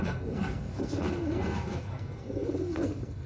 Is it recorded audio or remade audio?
remade